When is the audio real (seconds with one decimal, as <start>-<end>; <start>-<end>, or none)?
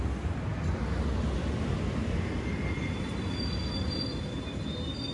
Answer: 0.0-5.1